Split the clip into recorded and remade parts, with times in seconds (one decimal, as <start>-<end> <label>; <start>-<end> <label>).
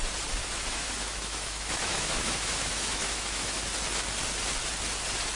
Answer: 0.0-0.4 recorded; 0.4-3.6 remade; 3.6-5.4 recorded